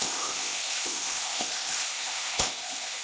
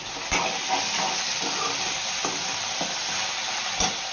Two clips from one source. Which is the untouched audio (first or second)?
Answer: second